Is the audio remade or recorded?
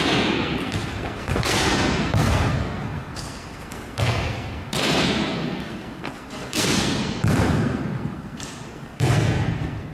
remade